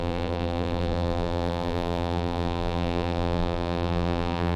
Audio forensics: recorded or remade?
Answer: remade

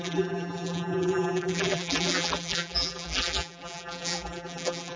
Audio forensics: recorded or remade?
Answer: remade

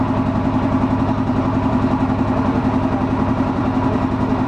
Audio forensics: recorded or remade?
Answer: remade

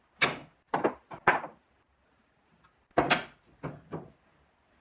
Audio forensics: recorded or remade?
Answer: recorded